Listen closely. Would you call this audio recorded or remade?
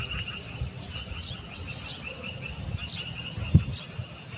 recorded